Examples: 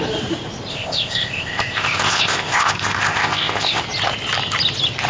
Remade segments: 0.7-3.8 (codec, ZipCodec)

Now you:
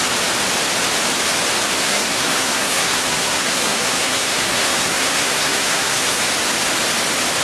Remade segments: 1.8-6.2 (codec, SNAC)